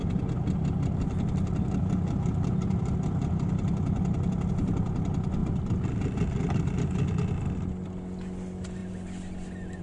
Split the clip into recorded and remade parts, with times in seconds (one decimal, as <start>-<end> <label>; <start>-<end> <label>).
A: 0.0-9.8 recorded